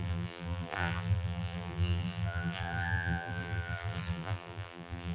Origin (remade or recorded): remade